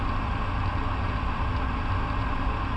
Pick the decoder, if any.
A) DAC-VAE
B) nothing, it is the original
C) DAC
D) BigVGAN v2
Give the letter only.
B